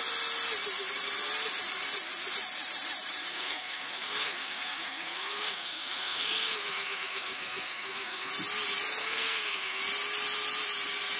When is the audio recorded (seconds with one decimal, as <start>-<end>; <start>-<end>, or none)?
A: 0.0-3.3; 8.3-9.0; 9.8-11.2